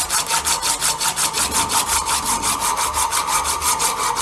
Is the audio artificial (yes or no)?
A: no